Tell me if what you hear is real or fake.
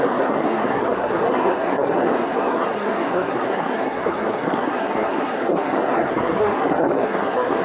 fake